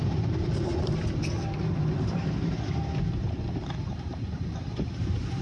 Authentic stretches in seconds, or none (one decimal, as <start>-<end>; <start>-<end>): 0.7-3.9